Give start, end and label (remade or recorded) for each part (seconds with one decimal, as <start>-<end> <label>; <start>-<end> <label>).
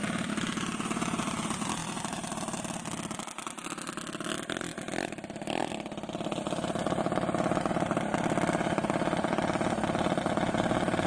0.0-11.1 recorded